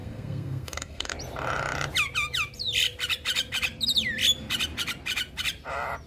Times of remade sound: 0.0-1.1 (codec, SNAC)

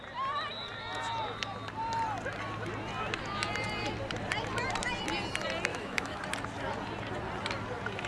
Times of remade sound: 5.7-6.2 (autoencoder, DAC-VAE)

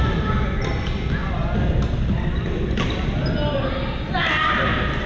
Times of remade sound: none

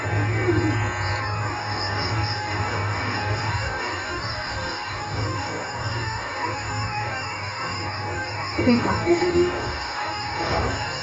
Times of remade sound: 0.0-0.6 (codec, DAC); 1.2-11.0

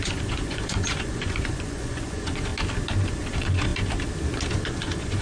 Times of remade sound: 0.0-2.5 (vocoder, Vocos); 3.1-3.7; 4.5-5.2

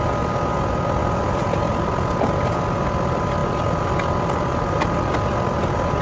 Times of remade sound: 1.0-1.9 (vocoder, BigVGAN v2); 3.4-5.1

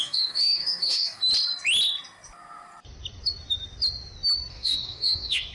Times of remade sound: 0.0-1.2 (codec, DAC); 4.5-5.5

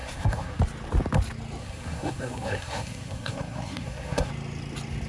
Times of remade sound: 0.0-0.6 (codec, SNAC); 1.6-4.3